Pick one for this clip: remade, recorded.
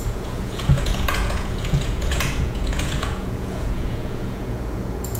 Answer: remade